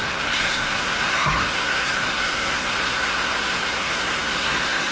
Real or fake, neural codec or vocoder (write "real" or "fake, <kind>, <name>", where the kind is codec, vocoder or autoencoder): fake, codec, SNAC